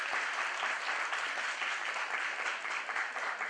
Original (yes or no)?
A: yes